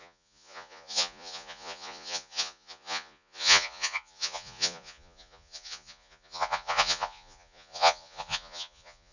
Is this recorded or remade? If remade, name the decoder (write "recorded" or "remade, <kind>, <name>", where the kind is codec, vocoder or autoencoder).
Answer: remade, vocoder, Vocos